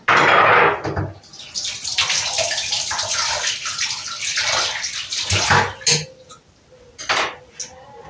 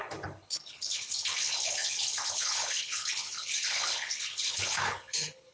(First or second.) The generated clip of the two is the second